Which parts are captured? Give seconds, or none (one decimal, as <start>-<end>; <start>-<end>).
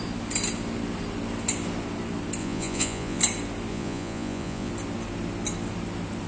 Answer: 0.0-2.4; 3.2-3.7; 4.7-6.3